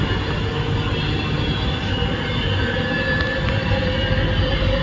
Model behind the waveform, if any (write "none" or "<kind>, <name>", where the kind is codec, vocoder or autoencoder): none